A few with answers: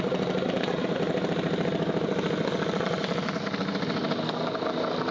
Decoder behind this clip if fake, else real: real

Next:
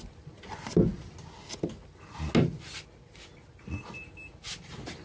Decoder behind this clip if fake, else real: real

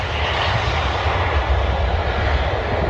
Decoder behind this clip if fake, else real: real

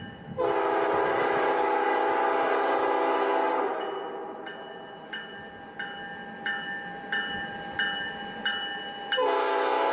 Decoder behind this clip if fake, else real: real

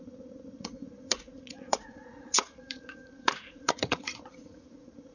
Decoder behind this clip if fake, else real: fake, vocoder, Vocos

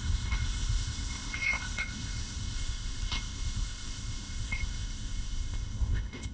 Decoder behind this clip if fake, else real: fake, codec, ZipCodec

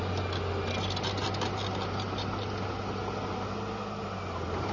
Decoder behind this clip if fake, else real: real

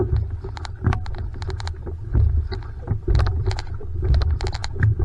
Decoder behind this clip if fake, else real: real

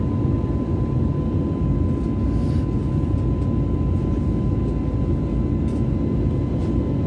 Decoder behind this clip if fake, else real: real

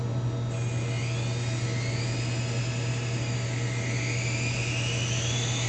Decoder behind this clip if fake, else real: real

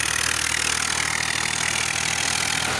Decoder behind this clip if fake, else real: real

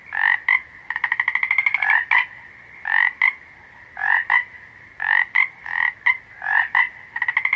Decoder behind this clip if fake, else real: real